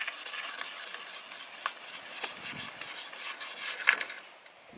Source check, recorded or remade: recorded